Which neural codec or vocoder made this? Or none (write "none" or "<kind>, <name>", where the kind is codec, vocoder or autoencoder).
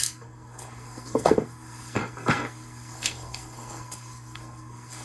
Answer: codec, SNAC